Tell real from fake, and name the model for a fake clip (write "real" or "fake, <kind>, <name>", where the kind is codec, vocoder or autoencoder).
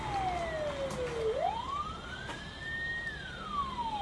real